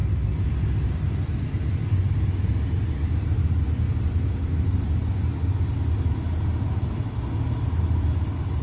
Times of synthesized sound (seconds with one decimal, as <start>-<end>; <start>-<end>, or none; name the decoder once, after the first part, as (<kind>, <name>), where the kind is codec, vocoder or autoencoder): none